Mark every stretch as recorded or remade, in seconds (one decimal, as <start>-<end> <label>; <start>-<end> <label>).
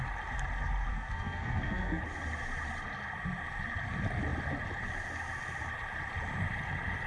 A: 0.0-0.9 recorded; 0.9-2.0 remade; 2.0-7.1 recorded